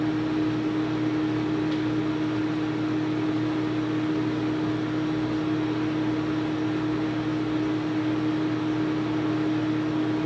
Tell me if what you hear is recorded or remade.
recorded